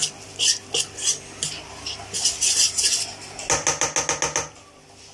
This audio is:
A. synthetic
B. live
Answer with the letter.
B